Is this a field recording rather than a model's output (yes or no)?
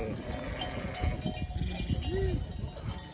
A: yes